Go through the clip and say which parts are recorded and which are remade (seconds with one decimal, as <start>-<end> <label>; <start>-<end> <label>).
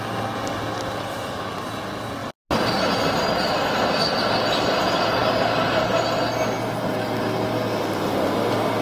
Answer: 0.0-1.2 recorded; 1.2-1.8 remade; 1.8-8.8 recorded